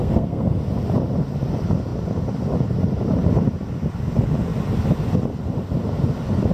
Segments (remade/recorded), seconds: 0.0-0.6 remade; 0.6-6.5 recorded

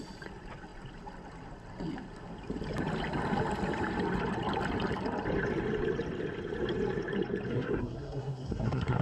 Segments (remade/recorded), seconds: 0.0-7.5 recorded; 7.5-9.0 remade

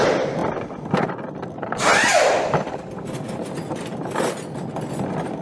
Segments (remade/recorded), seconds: 0.0-5.4 recorded

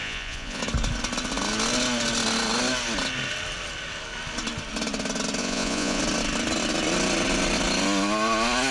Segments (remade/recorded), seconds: 0.0-0.6 remade; 0.6-5.4 recorded; 5.4-6.0 remade; 6.0-8.7 recorded

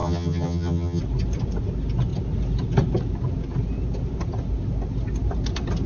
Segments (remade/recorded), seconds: 0.0-1.0 remade; 1.0-5.9 recorded

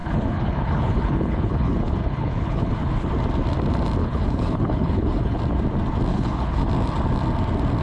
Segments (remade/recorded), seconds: 0.0-3.1 remade; 3.1-4.0 recorded; 4.0-5.4 remade; 5.4-6.1 recorded; 6.1-6.6 remade; 6.6-7.8 recorded